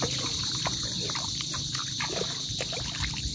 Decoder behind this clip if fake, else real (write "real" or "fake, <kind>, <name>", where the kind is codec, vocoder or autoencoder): real